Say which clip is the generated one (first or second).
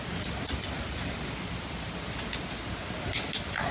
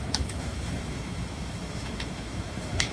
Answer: second